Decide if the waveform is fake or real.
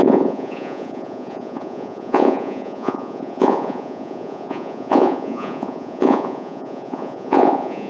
fake